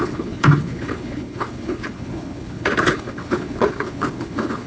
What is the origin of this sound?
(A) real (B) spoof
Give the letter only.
B